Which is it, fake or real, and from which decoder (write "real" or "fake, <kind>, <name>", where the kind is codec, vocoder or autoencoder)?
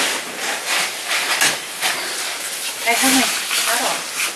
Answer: real